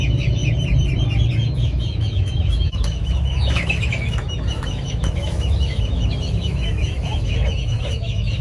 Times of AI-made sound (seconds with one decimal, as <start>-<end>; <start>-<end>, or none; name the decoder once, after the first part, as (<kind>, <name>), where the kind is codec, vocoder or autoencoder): 0.0-0.4 (autoencoder, DAC-VAE); 1.3-8.4